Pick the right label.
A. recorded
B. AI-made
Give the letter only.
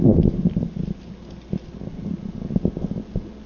A